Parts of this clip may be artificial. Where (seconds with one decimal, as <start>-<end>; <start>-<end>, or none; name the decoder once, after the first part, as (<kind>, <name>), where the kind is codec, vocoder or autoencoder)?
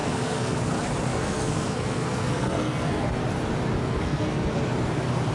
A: 0.0-0.6 (codec, SNAC); 1.1-3.2; 3.8-4.6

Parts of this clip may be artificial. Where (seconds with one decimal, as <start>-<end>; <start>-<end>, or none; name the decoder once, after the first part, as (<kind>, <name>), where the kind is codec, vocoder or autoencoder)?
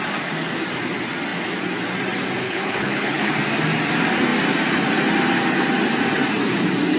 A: 2.4-3.3 (codec, HILCodec)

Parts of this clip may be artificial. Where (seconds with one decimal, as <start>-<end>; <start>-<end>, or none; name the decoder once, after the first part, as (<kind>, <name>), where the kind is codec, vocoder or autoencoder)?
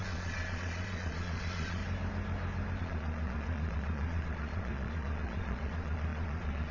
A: 0.0-1.8 (vocoder, Vocos); 2.8-6.7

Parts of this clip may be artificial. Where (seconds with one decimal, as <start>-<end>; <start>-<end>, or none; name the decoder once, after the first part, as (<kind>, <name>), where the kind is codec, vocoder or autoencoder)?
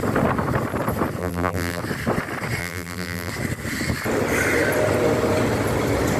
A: 1.2-1.8 (vocoder, BigVGAN v2); 2.6-3.3